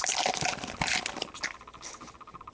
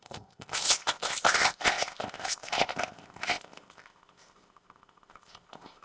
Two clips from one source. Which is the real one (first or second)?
first